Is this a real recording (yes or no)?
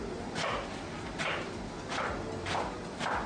yes